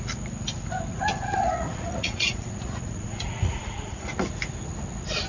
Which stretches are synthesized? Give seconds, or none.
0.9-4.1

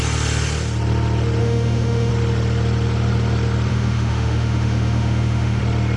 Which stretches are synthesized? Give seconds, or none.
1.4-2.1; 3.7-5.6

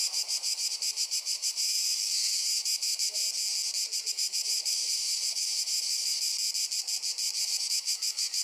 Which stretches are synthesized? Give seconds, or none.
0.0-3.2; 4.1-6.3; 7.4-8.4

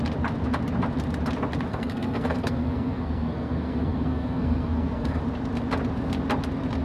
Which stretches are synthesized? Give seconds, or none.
1.7-5.2

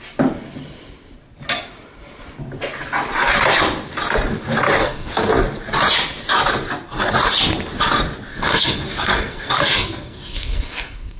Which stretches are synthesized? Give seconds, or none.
4.8-5.3; 8.3-11.2

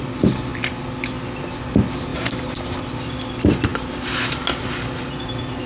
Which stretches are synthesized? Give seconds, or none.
none